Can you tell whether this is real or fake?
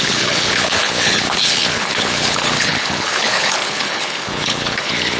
fake